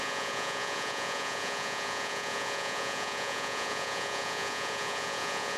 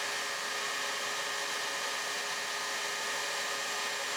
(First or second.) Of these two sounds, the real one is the second